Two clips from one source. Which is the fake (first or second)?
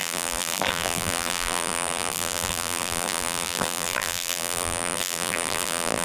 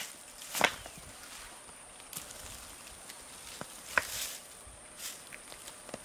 first